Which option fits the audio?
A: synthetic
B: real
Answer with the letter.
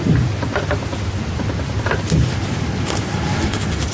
B